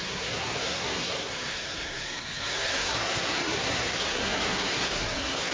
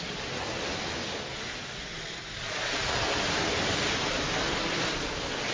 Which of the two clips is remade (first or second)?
first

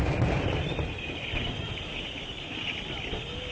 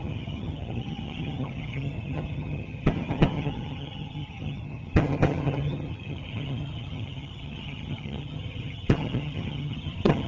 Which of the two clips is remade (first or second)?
second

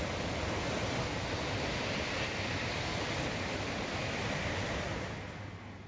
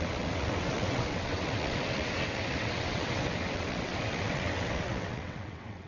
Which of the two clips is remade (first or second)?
second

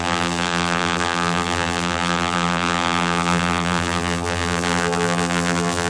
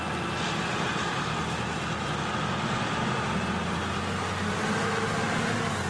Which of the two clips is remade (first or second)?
first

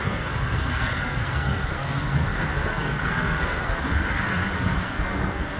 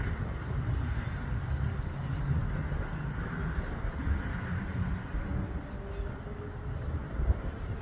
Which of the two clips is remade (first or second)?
first